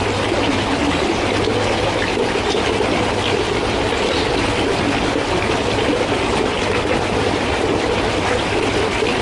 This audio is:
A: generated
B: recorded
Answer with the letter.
B